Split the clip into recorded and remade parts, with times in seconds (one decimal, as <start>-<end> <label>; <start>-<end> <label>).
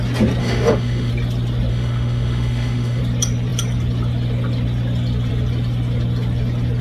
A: 0.0-0.4 recorded; 0.4-1.1 remade; 1.1-1.7 recorded; 1.7-3.0 remade; 3.0-6.8 recorded